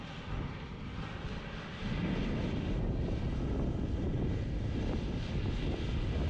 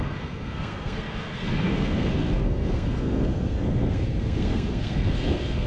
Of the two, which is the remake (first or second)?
second